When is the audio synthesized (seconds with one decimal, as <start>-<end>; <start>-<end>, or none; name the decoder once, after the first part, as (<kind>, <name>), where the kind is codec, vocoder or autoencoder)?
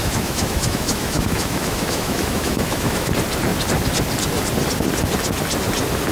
0.0-3.1 (autoencoder, DAC-VAE)